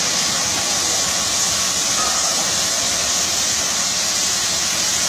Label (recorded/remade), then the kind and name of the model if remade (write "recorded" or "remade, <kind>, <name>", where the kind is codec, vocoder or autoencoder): recorded